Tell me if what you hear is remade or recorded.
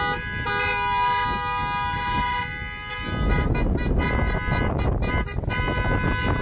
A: recorded